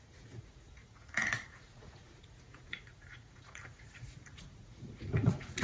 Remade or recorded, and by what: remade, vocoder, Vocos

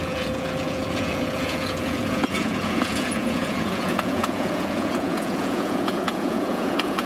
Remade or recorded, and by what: remade, vocoder, Vocos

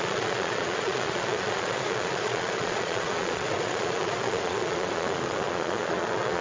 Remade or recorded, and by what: remade, vocoder, Vocos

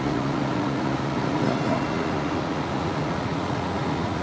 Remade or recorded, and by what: remade, vocoder, Vocos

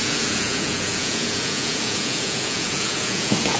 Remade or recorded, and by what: remade, vocoder, Vocos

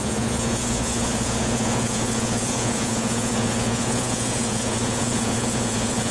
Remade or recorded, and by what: remade, vocoder, Vocos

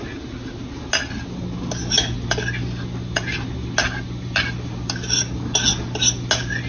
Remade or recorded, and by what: recorded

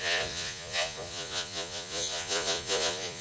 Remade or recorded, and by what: remade, vocoder, Vocos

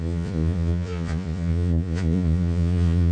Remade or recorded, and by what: remade, vocoder, Vocos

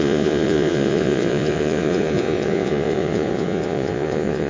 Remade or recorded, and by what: remade, vocoder, Vocos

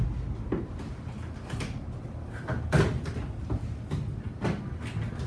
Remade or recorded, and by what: recorded